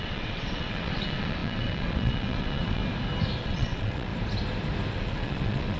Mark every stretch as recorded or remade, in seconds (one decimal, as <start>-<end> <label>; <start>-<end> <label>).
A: 0.0-2.8 remade; 2.8-3.4 recorded; 3.4-4.1 remade; 4.1-4.9 recorded; 4.9-5.8 remade